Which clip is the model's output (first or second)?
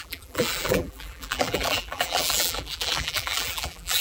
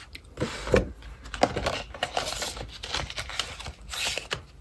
first